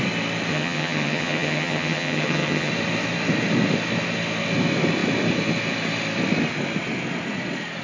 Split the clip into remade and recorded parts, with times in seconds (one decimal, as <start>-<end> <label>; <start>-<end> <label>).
0.0-0.5 recorded; 0.5-2.7 remade; 2.7-7.8 recorded